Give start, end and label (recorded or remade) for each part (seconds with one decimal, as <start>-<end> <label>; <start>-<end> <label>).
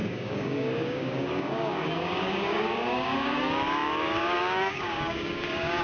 0.0-5.8 remade